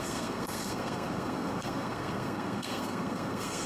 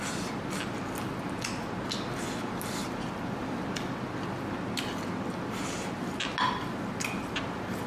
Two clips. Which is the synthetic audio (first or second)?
first